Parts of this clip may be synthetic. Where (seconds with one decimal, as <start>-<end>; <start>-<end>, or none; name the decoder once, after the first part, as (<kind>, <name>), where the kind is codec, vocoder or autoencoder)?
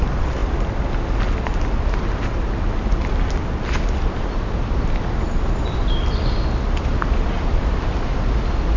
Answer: none